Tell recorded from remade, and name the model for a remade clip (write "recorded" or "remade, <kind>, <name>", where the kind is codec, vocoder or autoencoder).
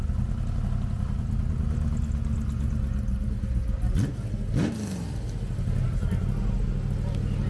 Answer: recorded